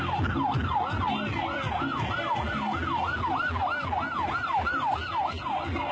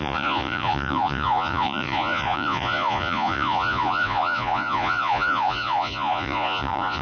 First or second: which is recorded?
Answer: first